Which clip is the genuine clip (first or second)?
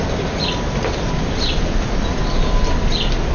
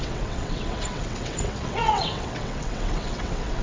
first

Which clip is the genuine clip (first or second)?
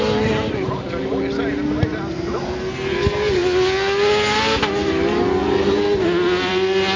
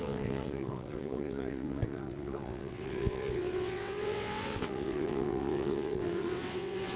first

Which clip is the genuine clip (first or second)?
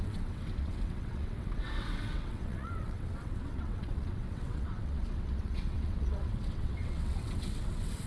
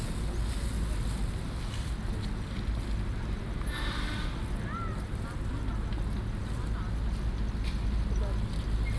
second